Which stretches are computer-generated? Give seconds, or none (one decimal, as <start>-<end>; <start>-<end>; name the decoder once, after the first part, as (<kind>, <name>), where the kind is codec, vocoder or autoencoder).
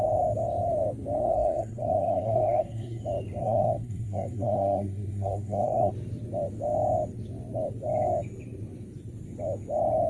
1.2-3.0 (codec, SNAC); 3.4-5.9